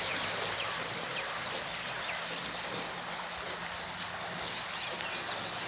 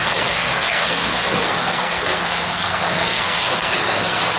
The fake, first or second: second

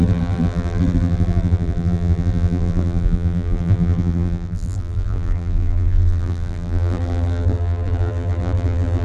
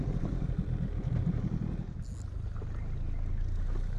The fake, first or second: first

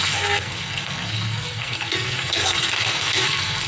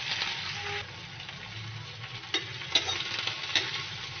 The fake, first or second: first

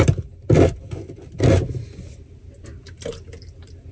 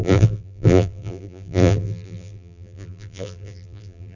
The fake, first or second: second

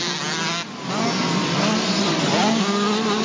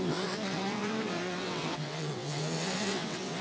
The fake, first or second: second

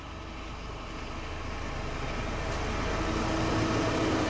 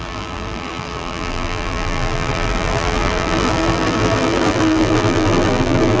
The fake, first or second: second